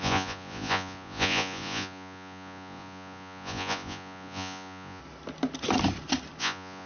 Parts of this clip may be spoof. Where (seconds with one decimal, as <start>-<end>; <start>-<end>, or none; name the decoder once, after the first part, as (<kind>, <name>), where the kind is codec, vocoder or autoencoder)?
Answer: 0.0-5.0 (vocoder, Vocos); 6.4-6.9